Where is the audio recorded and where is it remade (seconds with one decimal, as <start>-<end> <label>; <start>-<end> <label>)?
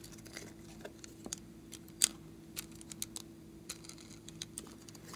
0.0-2.1 remade; 2.1-3.3 recorded; 3.3-5.2 remade